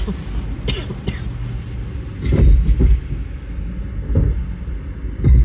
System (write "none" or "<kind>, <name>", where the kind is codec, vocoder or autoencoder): none